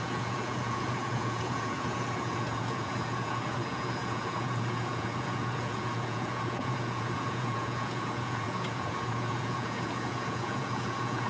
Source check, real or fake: fake